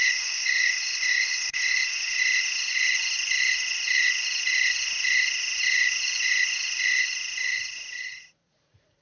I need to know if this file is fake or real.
fake